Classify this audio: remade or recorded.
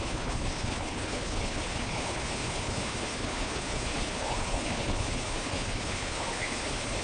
remade